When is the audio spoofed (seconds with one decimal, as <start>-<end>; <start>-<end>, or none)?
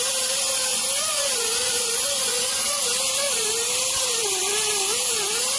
0.7-2.8